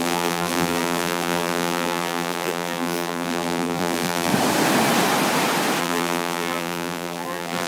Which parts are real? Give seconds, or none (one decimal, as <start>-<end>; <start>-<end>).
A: 4.3-5.8